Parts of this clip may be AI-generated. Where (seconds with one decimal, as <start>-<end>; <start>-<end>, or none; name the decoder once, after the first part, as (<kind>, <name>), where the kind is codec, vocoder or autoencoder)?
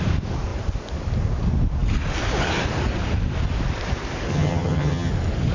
4.3-5.1 (vocoder, HiFi-GAN)